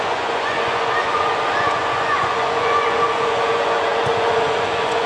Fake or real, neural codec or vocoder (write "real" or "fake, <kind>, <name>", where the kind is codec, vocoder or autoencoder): fake, vocoder, Vocos